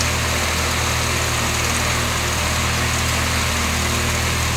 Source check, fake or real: real